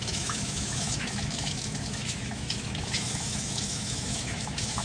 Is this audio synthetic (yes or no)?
yes